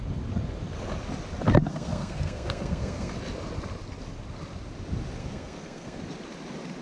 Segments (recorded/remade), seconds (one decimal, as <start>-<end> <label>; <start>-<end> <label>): 0.0-1.7 recorded; 1.7-3.1 remade; 3.1-5.2 recorded; 5.2-6.0 remade; 6.0-6.8 recorded